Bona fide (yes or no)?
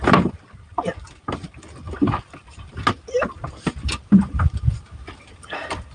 yes